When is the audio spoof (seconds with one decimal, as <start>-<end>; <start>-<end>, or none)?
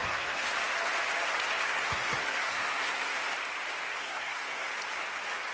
0.0-0.5; 1.6-3.2; 4.0-4.7